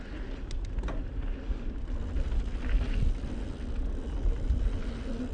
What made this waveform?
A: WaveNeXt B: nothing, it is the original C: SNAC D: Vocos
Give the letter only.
B